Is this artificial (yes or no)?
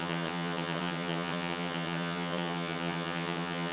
yes